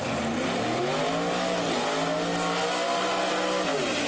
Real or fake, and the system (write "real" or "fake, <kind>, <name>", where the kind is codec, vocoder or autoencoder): real